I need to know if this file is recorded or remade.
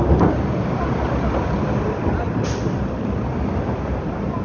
remade